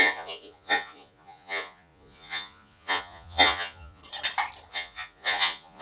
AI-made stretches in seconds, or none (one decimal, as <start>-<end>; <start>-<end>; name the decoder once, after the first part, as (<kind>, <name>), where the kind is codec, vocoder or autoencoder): 0.0-4.0 (vocoder, Vocos); 4.7-5.8